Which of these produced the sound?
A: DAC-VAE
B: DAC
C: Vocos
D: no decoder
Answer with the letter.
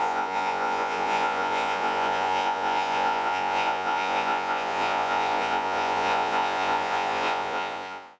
C